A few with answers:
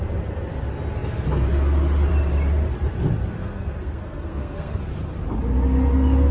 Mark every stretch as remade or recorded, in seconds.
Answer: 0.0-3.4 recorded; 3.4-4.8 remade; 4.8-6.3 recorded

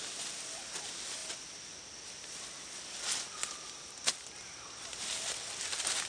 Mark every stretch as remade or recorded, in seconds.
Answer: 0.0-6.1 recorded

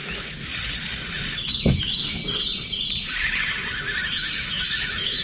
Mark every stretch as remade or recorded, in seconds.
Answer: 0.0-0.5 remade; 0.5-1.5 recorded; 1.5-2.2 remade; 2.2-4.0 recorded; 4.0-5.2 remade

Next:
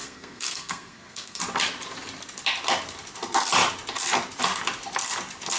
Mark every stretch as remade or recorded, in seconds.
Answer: 0.0-1.4 remade; 1.4-5.6 recorded

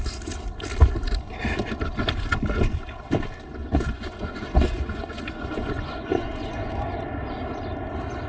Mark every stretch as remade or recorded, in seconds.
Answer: 0.0-3.6 recorded; 3.6-6.7 remade; 6.7-8.3 recorded